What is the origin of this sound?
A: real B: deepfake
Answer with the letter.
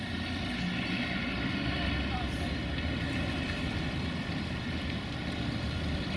A